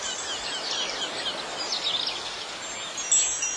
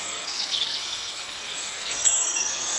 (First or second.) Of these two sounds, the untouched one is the first